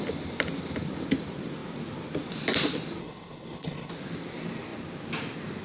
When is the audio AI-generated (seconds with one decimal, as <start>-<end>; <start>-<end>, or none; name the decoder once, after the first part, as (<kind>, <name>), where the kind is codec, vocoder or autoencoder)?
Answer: 3.0-3.9 (codec, HILCodec)